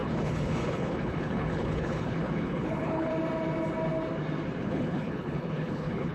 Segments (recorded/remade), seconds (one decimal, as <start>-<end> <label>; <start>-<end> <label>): 0.0-3.1 remade; 3.1-4.6 recorded; 4.6-6.1 remade